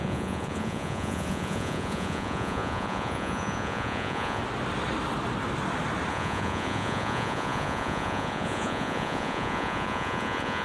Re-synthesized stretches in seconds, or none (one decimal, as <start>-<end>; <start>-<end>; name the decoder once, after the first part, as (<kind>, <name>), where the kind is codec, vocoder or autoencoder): 0.0-4.4 (vocoder, Vocos); 6.1-10.6